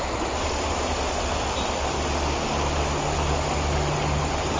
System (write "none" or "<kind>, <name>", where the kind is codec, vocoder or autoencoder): none